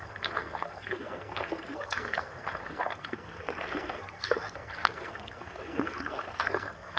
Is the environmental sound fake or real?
fake